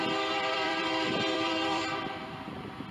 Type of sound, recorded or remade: remade